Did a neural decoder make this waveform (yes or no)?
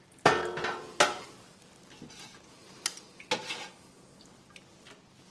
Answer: no